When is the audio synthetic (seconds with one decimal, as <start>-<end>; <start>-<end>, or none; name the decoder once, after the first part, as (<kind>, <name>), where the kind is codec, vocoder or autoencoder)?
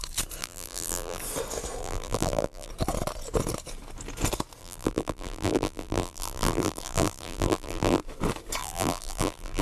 0.4-1.2 (vocoder, BigVGAN v2); 1.8-2.7; 4.6-8.0; 8.6-9.6